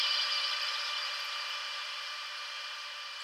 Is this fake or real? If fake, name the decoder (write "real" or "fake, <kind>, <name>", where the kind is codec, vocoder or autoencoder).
fake, vocoder, BigVGAN v2